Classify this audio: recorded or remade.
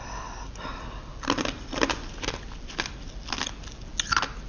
recorded